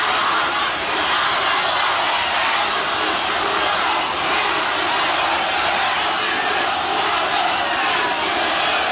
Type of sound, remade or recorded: recorded